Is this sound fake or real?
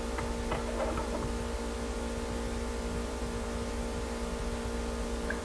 real